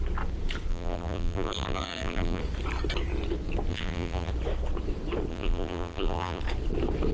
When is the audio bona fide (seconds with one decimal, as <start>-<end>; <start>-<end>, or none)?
0.0-0.7; 2.4-3.7; 4.3-5.3; 6.4-7.1